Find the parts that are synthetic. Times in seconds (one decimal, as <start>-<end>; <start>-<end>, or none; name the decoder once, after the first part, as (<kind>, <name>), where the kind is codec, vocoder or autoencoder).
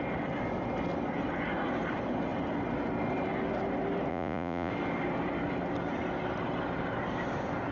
4.1-4.7 (vocoder, Vocos)